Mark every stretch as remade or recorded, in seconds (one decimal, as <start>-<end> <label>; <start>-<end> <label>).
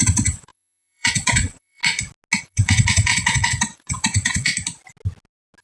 0.0-1.8 remade; 1.8-2.4 recorded; 2.4-4.5 remade; 4.5-5.6 recorded